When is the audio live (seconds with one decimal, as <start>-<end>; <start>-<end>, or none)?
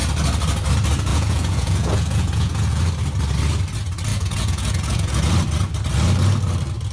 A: 0.0-1.1; 2.8-4.1; 5.3-6.9